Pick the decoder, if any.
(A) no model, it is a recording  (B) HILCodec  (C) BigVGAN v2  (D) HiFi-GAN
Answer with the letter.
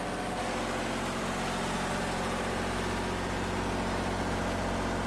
A